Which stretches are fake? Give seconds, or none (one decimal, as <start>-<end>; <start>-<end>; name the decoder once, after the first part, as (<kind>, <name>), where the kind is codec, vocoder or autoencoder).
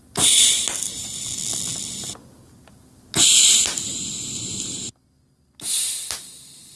none